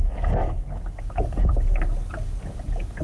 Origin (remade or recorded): remade